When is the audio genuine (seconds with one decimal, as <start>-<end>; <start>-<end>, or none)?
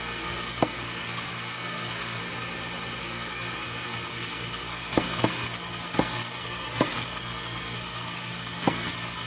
2.2-3.0